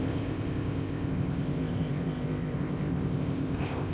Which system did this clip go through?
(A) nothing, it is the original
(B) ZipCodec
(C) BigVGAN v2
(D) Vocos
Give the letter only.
B